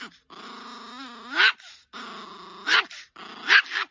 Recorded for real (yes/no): yes